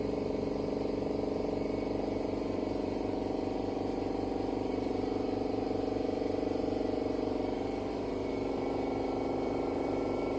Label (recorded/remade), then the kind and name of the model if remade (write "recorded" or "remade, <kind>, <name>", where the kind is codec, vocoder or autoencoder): remade, vocoder, BigVGAN v2